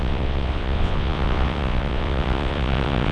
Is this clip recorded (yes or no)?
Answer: no